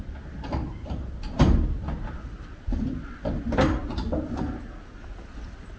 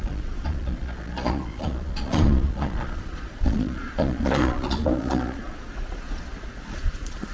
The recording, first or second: first